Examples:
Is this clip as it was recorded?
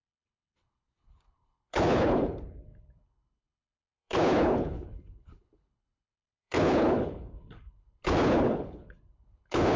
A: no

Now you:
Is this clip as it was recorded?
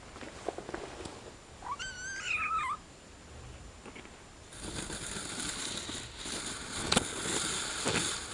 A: yes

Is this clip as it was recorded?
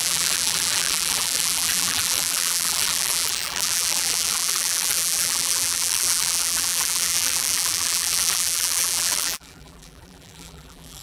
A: no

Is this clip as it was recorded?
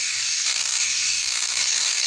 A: no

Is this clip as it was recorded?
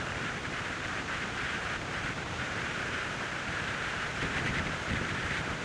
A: no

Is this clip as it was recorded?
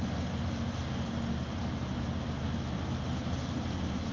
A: yes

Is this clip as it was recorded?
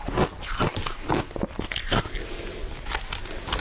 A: yes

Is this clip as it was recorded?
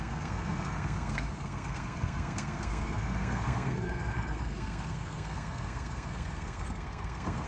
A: no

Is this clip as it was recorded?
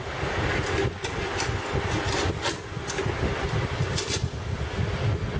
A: yes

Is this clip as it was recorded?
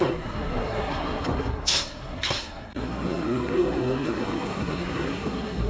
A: no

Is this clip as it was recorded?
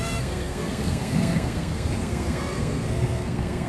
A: no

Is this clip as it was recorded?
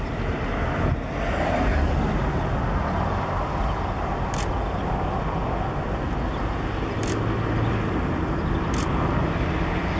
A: yes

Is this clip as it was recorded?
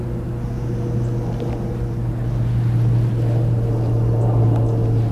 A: yes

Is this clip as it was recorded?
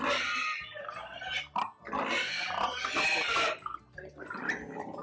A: yes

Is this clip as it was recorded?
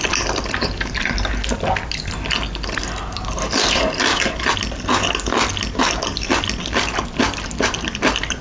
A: yes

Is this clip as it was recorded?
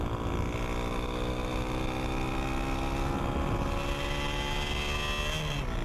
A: yes